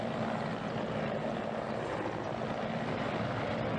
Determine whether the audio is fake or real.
real